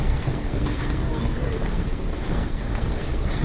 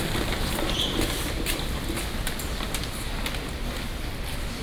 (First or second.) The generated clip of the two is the first